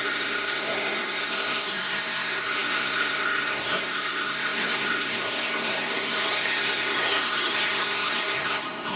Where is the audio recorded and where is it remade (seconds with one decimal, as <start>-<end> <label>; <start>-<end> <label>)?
0.0-9.0 remade